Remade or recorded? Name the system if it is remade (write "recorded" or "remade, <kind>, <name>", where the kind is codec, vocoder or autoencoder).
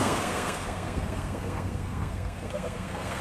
remade, codec, SNAC